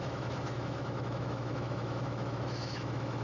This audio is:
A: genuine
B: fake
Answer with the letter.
B